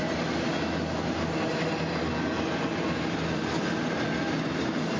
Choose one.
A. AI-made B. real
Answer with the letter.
B